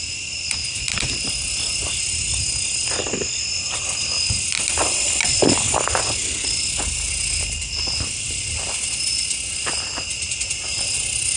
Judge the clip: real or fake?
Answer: real